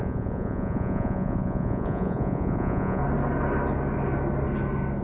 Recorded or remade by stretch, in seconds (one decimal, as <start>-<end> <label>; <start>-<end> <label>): 0.0-3.0 remade; 3.0-5.0 recorded